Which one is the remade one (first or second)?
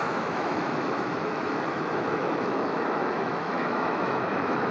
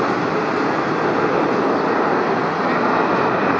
first